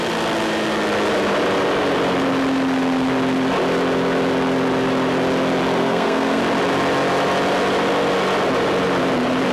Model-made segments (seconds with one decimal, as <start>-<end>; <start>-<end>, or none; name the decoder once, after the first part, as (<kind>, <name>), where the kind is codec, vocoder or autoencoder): 5.8-6.4 (codec, SNAC)